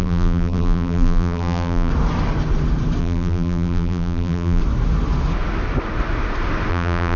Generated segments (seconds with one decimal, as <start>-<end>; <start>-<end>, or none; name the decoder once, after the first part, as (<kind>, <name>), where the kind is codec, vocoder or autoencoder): 0.0-1.9 (vocoder, BigVGAN v2); 3.0-4.6; 6.7-7.2